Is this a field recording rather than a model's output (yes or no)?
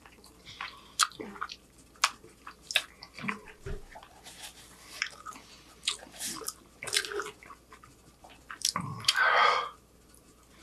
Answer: yes